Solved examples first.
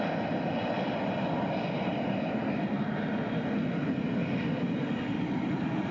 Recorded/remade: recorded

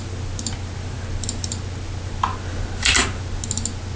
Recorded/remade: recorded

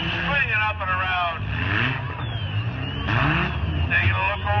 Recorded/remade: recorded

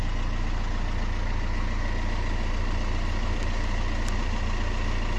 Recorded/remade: recorded